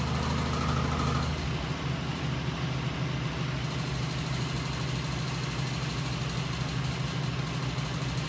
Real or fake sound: real